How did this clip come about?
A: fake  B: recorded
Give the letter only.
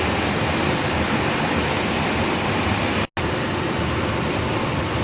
B